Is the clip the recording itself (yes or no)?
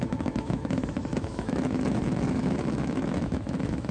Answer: no